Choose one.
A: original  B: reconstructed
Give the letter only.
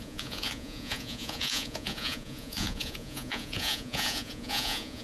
B